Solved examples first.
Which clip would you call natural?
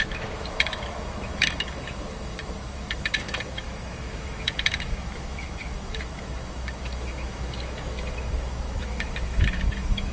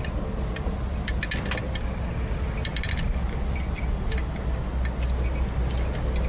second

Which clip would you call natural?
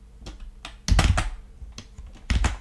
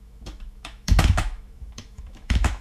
first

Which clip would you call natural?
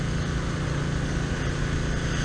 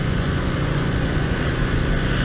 first